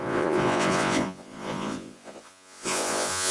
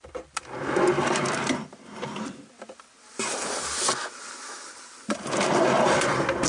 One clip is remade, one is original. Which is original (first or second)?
second